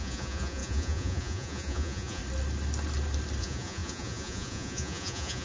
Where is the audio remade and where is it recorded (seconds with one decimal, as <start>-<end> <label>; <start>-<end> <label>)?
0.0-2.2 remade; 2.2-3.4 recorded; 3.4-5.4 remade